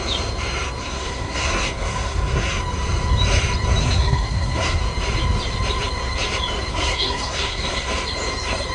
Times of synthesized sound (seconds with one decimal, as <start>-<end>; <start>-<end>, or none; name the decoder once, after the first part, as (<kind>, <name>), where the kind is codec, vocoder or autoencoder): 0.8-2.6 (codec, SNAC); 3.8-4.8; 6.7-7.9